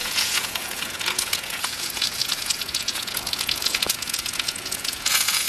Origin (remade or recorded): remade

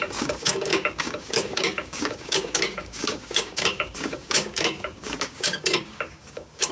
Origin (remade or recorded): remade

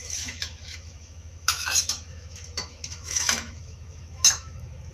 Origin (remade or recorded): remade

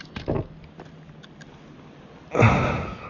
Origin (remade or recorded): recorded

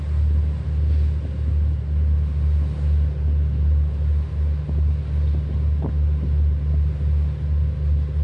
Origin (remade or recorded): recorded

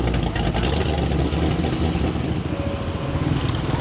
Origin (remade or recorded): recorded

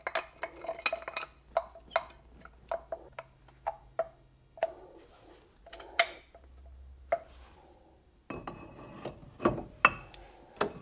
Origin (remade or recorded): recorded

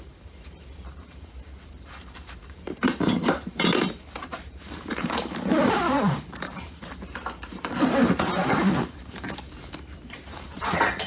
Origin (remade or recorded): remade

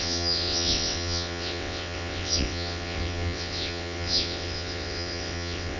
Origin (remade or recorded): remade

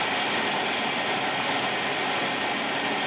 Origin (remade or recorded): recorded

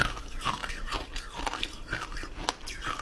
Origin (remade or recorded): recorded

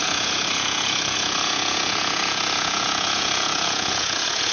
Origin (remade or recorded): remade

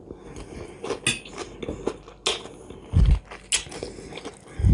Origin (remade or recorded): recorded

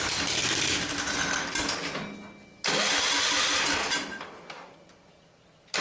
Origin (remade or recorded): recorded